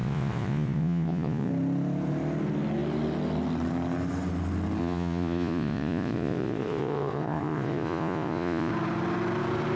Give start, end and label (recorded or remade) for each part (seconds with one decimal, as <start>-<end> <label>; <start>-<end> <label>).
0.0-1.5 remade; 1.5-4.8 recorded; 4.8-8.7 remade; 8.7-9.8 recorded